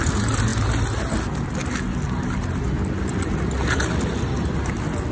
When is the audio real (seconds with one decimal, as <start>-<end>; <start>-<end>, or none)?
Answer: 0.0-5.1